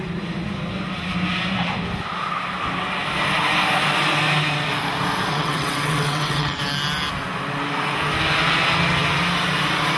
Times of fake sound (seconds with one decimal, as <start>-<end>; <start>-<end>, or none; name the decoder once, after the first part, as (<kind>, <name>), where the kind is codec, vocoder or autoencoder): 5.3-6.6 (vocoder, WaveNeXt)